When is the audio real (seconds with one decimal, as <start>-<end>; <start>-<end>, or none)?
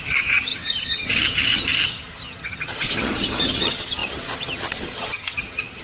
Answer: none